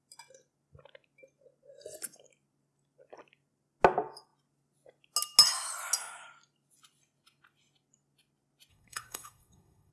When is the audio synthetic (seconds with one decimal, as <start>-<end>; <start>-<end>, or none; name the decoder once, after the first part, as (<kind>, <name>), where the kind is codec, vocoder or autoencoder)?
8.7-9.9 (codec, SNAC)